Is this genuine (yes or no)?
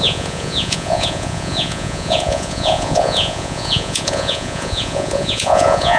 no